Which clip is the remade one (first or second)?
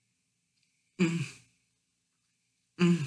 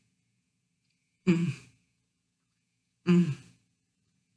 second